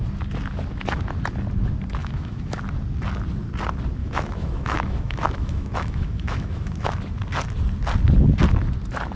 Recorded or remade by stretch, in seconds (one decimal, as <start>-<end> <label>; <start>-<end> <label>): 0.0-2.0 recorded; 2.0-2.6 remade; 2.6-4.0 recorded; 4.0-7.0 remade; 7.0-9.2 recorded